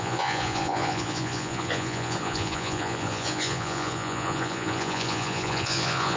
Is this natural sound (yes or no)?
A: no